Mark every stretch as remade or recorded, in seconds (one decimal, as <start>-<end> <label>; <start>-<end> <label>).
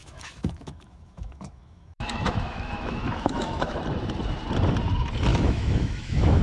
0.0-3.8 remade; 3.8-5.3 recorded; 5.3-6.4 remade